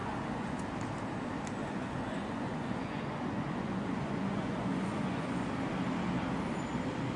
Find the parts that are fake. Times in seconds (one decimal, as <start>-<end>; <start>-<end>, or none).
0.0-0.6; 1.6-5.5